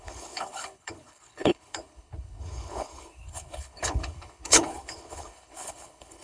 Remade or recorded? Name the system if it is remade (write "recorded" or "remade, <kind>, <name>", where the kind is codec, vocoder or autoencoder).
remade, codec, HILCodec